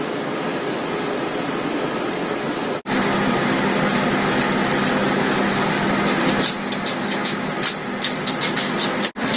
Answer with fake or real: real